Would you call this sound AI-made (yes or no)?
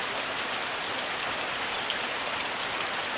no